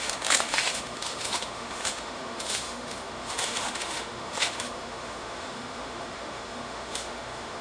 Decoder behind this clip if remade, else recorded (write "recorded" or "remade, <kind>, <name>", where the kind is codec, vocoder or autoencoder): remade, autoencoder, DAC-VAE